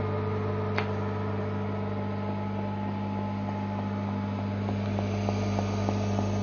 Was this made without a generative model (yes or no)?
yes